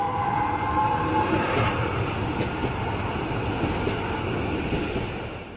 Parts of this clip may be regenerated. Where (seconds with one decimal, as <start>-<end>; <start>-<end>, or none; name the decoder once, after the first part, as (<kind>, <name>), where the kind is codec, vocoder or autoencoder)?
none